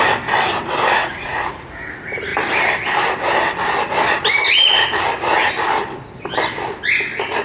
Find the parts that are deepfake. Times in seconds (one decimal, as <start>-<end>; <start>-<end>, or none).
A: 1.0-1.8